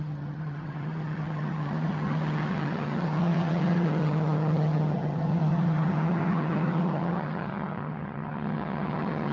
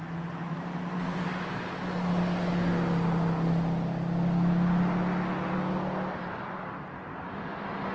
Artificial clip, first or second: first